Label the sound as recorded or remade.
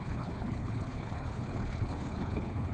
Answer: remade